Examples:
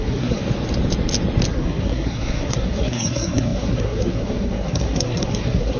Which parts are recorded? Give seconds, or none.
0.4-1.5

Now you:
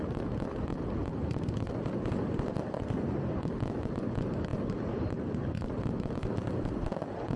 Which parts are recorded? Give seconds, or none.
0.0-7.4

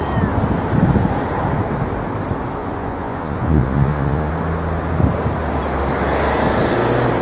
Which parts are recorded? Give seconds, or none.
0.0-2.6; 4.3-7.2

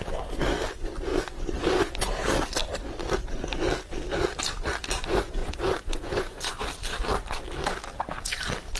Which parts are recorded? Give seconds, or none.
0.0-1.1; 2.1-5.4; 6.6-8.8